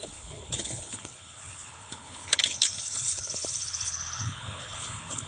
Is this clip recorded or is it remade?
remade